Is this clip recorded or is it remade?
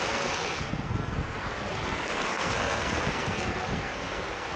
remade